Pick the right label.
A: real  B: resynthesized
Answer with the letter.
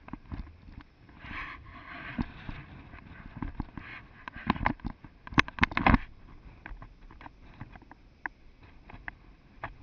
A